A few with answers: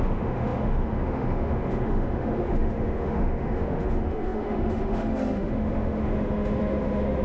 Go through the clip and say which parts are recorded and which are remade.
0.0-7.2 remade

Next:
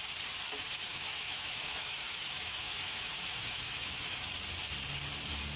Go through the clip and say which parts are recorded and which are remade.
0.0-0.9 recorded; 0.9-4.3 remade; 4.3-5.6 recorded

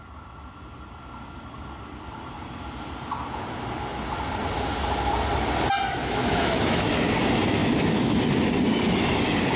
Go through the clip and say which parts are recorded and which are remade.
0.0-6.0 recorded; 6.0-6.9 remade; 6.9-7.6 recorded; 7.6-8.2 remade; 8.2-9.6 recorded

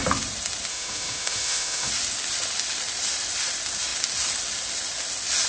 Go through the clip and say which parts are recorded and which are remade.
0.0-0.7 recorded; 0.7-1.9 remade; 1.9-5.5 recorded

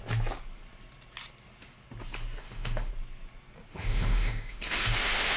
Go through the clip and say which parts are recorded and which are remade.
0.0-2.4 recorded; 2.4-2.9 remade; 2.9-3.7 recorded; 3.7-5.4 remade

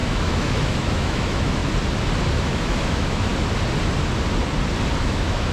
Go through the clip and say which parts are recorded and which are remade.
0.0-1.6 remade; 1.6-2.4 recorded; 2.4-3.3 remade; 3.3-5.0 recorded; 5.0-5.5 remade